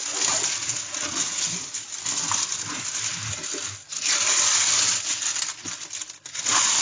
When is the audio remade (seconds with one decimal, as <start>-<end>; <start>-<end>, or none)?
none